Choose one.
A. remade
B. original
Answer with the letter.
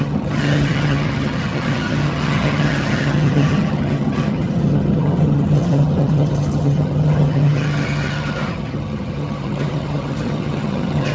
A